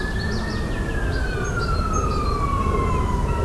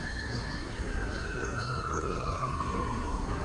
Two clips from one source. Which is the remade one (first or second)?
second